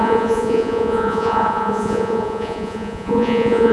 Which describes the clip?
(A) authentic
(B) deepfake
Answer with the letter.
B